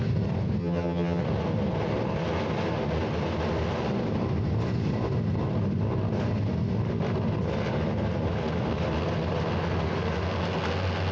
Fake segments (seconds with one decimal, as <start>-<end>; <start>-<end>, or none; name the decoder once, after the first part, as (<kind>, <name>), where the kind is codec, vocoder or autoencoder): 0.6-1.2 (vocoder, HiFi-GAN)